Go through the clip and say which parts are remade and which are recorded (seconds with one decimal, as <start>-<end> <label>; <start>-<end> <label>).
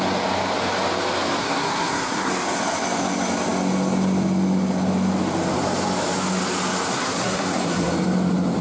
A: 0.0-1.4 recorded; 1.4-2.3 remade; 2.3-6.9 recorded; 6.9-7.9 remade; 7.9-8.6 recorded